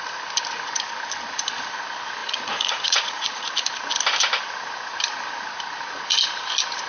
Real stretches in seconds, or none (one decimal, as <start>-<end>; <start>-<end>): 0.0-2.2; 3.5-6.9